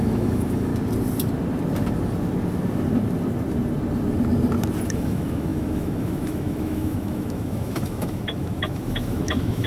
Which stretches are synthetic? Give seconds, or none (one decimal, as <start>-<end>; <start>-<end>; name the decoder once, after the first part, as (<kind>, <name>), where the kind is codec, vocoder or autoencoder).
0.0-0.7 (autoencoder, DAC-VAE); 4.9-9.7